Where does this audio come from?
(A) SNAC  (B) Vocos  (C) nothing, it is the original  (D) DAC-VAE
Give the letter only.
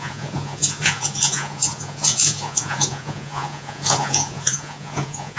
B